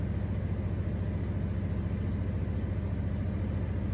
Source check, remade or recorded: recorded